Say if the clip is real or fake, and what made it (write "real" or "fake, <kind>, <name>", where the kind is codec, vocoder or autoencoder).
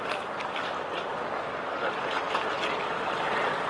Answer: real